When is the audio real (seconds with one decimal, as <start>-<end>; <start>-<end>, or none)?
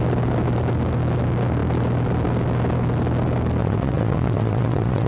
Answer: 0.0-3.6